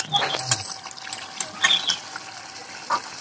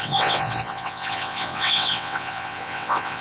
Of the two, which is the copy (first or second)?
second